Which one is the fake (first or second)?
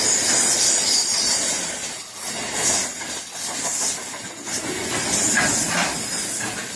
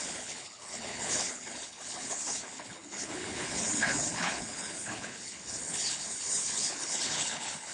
second